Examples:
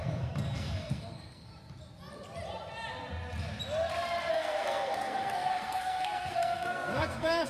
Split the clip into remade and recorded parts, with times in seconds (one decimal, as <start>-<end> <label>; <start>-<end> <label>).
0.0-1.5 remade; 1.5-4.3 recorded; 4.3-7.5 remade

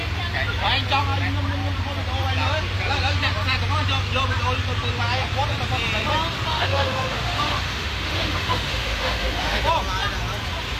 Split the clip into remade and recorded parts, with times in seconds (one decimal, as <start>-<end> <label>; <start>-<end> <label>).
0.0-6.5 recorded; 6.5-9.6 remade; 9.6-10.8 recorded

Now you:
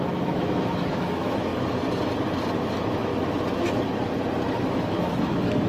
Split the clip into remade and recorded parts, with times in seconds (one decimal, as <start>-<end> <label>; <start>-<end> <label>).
0.0-1.5 remade; 1.5-2.7 recorded; 2.7-3.1 remade; 3.1-4.6 recorded; 4.6-5.7 remade